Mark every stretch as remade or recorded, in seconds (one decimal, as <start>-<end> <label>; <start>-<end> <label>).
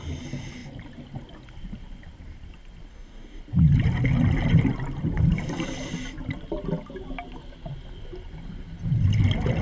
0.0-2.9 recorded; 2.9-3.4 remade; 3.4-9.6 recorded